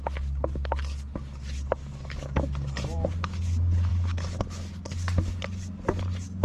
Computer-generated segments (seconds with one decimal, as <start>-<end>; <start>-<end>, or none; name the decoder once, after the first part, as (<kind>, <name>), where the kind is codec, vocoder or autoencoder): 1.8-2.4 (codec, DAC)